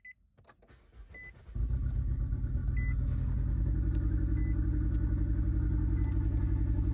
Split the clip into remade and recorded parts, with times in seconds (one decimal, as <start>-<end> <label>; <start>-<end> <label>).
0.0-6.9 recorded